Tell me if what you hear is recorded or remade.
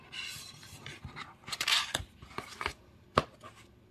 recorded